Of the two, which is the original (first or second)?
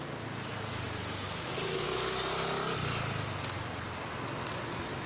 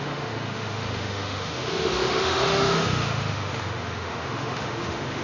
first